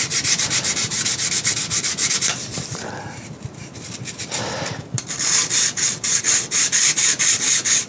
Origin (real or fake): fake